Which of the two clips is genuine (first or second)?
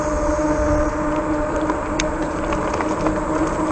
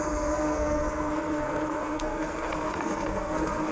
first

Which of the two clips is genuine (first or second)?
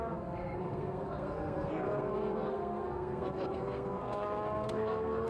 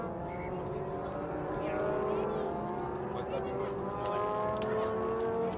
second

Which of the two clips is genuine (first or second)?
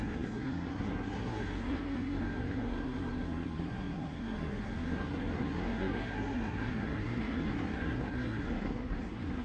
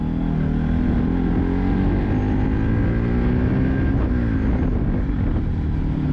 second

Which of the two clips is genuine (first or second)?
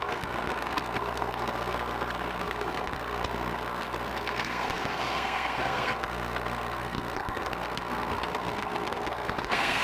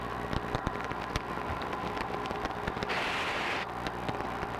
second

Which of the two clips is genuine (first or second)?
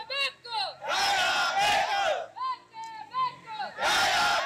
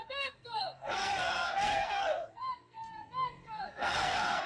first